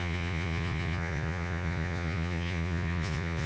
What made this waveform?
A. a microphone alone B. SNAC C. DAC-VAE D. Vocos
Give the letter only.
D